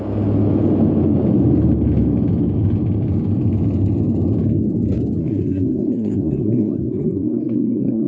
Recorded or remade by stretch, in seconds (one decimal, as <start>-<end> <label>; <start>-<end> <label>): 0.0-5.2 recorded; 5.2-8.1 remade